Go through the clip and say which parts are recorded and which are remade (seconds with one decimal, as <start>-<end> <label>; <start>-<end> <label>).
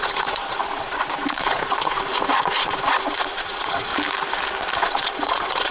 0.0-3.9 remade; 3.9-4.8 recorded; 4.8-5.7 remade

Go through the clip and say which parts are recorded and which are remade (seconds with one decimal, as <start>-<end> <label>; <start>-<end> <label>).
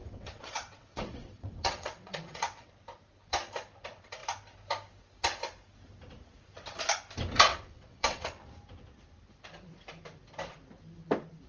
0.0-2.7 remade; 2.7-7.5 recorded; 7.5-8.5 remade; 8.5-11.5 recorded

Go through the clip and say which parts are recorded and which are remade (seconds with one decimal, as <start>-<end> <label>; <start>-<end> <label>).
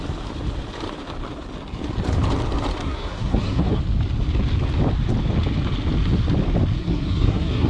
0.0-2.8 recorded; 2.8-3.8 remade; 3.8-6.8 recorded; 6.8-7.7 remade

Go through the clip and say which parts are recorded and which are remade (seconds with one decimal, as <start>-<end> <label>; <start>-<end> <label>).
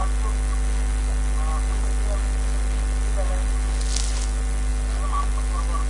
0.0-5.9 recorded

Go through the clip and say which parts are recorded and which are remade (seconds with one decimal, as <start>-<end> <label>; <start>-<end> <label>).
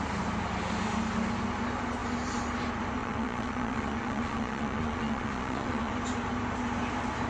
0.0-3.0 recorded; 3.0-5.9 remade; 5.9-7.3 recorded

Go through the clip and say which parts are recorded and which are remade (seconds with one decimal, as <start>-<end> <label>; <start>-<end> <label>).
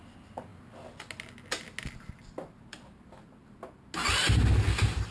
0.0-5.1 recorded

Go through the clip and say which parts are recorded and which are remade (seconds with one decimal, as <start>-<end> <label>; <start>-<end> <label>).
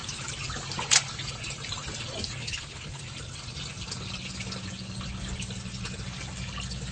0.0-2.4 recorded; 2.4-3.0 remade; 3.0-6.9 recorded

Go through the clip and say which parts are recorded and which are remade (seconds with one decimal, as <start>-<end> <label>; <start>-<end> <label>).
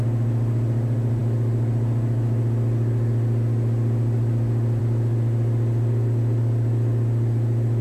0.0-7.8 recorded